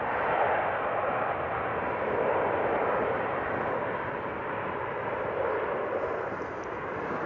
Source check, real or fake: real